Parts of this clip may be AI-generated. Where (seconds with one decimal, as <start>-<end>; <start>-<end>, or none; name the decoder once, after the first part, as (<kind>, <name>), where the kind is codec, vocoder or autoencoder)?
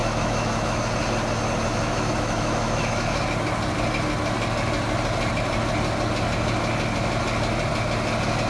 0.0-0.8 (autoencoder, DAC-VAE); 1.7-3.2